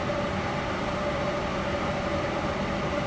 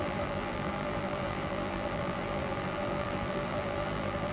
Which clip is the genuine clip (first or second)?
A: first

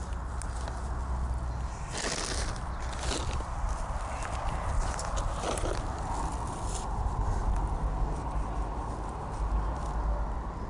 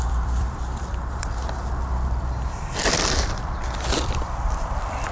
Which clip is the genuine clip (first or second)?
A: first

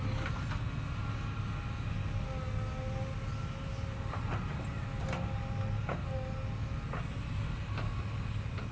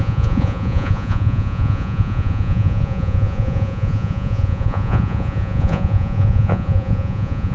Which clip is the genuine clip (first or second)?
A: first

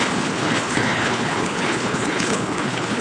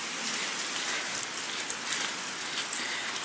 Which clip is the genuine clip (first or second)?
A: second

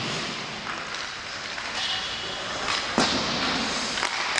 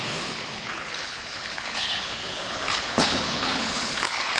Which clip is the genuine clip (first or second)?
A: first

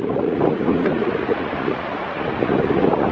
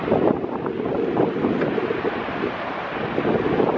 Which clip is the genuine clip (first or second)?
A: second